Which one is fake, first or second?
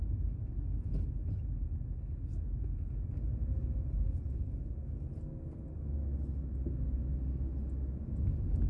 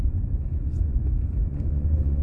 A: second